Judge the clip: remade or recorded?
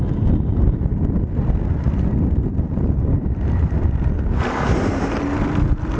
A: remade